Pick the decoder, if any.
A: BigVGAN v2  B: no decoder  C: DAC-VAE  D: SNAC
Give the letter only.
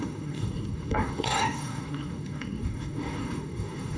D